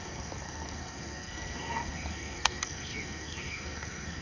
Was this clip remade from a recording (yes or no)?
yes